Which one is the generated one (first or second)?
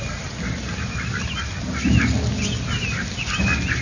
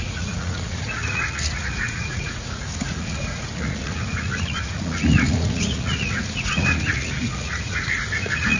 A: second